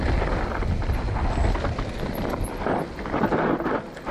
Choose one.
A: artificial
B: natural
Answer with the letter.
B